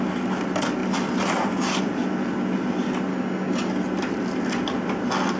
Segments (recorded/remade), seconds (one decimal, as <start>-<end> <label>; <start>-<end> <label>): 0.0-3.1 recorded; 3.1-3.7 remade; 3.7-5.4 recorded